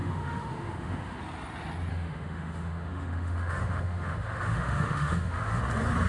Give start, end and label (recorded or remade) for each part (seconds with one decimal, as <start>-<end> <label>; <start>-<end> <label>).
0.0-1.2 remade; 1.2-1.9 recorded; 1.9-5.6 remade; 5.6-6.1 recorded